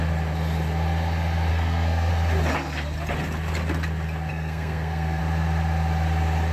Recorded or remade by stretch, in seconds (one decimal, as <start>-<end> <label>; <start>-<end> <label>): 0.0-1.5 recorded; 1.5-2.1 remade; 2.1-4.3 recorded; 4.3-5.2 remade; 5.2-6.5 recorded